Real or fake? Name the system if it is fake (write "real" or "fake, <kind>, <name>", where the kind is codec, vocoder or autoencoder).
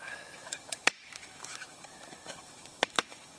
fake, autoencoder, DAC-VAE